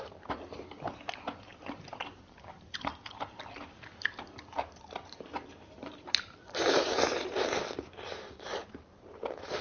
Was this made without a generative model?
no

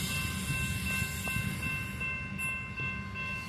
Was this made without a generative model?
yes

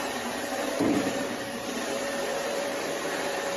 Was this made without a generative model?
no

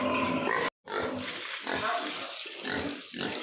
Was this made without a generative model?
yes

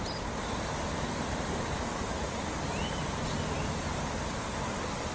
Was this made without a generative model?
yes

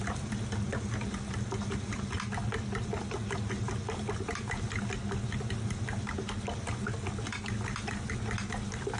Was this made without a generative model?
yes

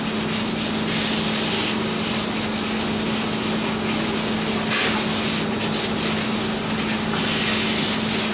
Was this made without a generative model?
yes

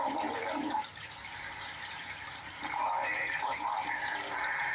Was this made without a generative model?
no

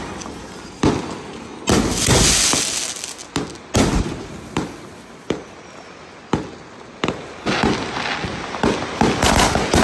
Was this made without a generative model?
yes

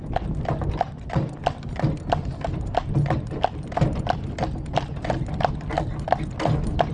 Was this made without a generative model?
yes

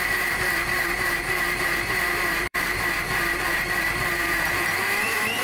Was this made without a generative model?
no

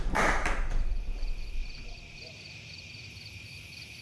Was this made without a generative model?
no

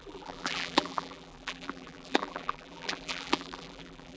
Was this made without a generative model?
no